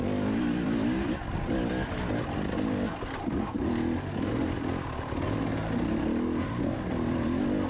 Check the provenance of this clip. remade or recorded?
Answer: recorded